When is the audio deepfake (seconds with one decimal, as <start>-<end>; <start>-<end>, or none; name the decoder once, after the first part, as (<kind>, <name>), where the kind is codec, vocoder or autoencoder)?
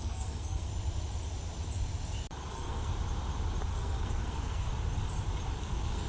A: 0.0-0.7 (codec, SNAC); 2.5-2.9; 3.7-4.7; 5.6-6.1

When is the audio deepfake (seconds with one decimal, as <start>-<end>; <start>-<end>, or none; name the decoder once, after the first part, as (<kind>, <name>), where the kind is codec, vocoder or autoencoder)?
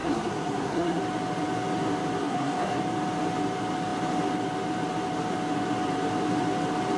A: 0.0-1.0 (codec, SNAC); 2.2-2.8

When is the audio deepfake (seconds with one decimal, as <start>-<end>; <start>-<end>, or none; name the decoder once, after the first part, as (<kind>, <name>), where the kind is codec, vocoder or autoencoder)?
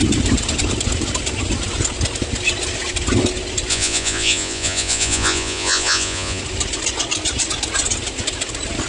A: 3.7-6.4 (vocoder, Vocos)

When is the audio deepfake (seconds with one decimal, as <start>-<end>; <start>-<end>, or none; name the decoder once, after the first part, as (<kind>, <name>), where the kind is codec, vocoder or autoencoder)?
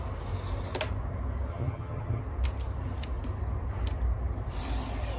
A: 1.5-2.2 (vocoder, HiFi-GAN)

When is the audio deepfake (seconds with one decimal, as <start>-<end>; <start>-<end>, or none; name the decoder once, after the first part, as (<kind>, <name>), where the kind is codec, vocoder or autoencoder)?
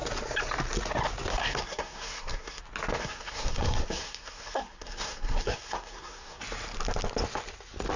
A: 1.3-2.6 (codec, SNAC); 3.0-6.4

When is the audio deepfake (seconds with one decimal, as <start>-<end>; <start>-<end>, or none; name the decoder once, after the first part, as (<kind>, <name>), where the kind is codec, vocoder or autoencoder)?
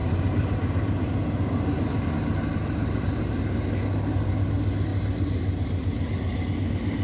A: 0.0-2.1 (vocoder, BigVGAN v2); 2.5-3.4; 4.9-6.5